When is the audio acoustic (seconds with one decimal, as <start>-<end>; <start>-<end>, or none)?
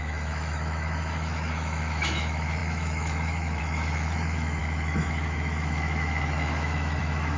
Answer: none